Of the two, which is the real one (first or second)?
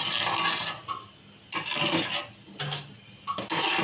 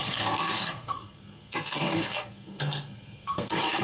first